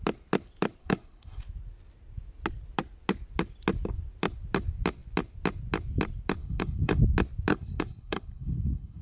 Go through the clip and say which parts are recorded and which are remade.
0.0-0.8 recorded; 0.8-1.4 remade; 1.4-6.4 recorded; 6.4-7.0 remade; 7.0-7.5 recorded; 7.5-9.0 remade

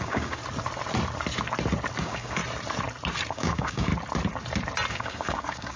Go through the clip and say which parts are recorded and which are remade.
0.0-0.4 remade; 0.4-2.0 recorded; 2.0-2.4 remade; 2.4-3.3 recorded; 3.3-3.9 remade; 3.9-4.9 recorded; 4.9-5.8 remade

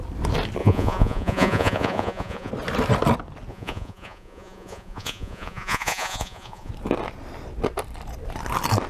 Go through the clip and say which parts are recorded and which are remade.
0.0-0.6 recorded; 0.6-2.5 remade; 2.5-3.5 recorded; 3.5-6.7 remade; 6.7-8.9 recorded

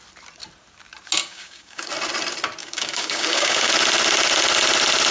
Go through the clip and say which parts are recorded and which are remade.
0.0-1.2 recorded; 1.2-1.9 remade; 1.9-2.6 recorded; 2.6-3.7 remade; 3.7-5.1 recorded

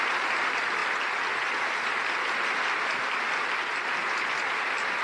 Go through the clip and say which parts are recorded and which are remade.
0.0-5.0 recorded

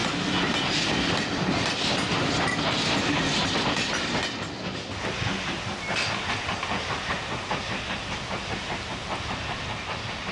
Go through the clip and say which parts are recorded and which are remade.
0.0-10.3 recorded

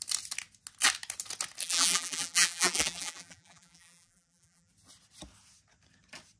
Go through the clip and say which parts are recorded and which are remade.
0.0-1.6 recorded; 1.6-4.7 remade; 4.7-6.4 recorded

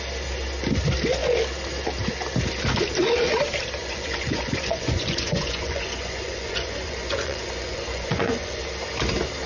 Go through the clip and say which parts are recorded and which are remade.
0.0-3.8 recorded; 3.8-8.6 remade; 8.6-9.5 recorded